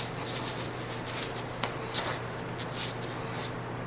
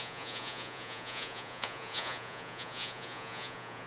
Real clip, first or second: first